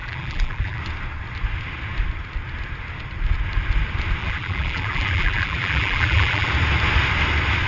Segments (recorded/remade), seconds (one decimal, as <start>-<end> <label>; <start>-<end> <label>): 0.0-0.8 remade; 0.8-4.2 recorded; 4.2-6.5 remade; 6.5-7.7 recorded